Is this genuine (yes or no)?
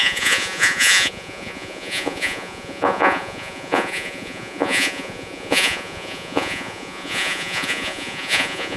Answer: no